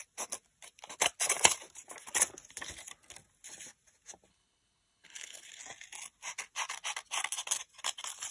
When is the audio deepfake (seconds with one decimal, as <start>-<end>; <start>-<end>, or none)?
4.3-5.6